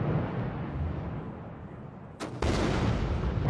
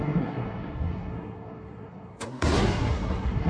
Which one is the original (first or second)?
first